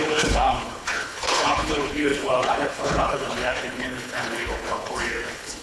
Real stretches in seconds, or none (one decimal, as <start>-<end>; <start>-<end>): none